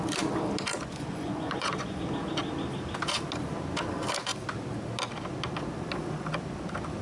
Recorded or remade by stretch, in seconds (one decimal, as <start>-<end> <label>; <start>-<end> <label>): 0.0-0.7 recorded; 0.7-2.0 remade; 2.0-7.0 recorded